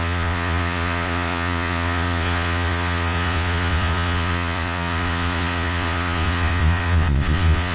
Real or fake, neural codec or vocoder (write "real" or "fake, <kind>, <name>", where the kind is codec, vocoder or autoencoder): fake, vocoder, Vocos